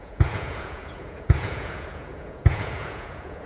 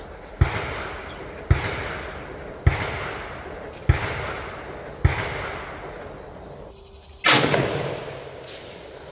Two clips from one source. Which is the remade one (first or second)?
first